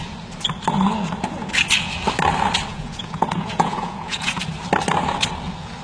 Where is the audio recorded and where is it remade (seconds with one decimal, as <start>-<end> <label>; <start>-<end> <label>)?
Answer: 0.0-2.7 recorded; 2.7-4.4 remade; 4.4-5.8 recorded